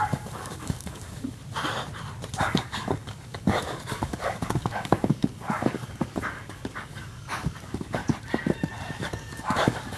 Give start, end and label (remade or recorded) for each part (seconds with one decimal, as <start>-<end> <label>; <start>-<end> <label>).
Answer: 0.0-1.4 remade; 1.4-2.4 recorded; 2.4-8.0 remade; 8.0-8.9 recorded; 8.9-10.0 remade